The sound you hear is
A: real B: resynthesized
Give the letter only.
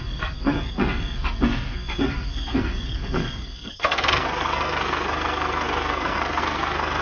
B